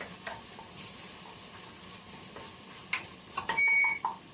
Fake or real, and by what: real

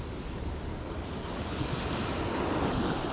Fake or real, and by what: real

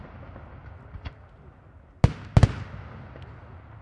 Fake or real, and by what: real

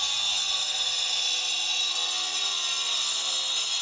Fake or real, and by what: real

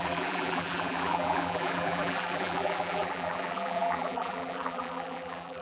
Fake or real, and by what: fake, vocoder, BigVGAN v2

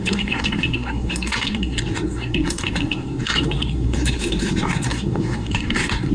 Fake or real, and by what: fake, codec, SNAC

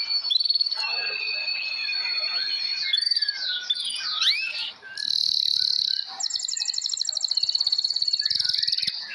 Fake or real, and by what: real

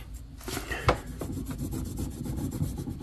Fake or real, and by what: real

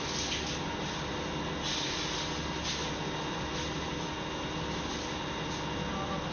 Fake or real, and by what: real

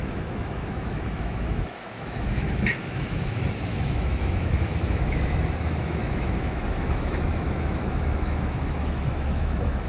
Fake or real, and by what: fake, autoencoder, DAC-VAE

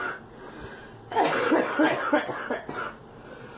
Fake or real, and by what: real